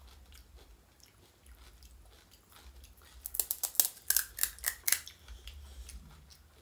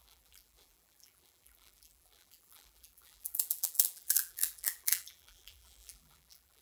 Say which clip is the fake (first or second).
second